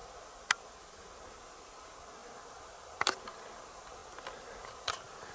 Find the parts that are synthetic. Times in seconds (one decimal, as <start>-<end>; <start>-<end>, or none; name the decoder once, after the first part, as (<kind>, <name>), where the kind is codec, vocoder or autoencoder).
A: none